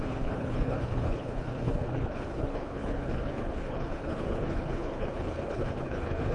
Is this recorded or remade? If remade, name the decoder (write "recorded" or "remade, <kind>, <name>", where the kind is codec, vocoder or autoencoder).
remade, codec, HILCodec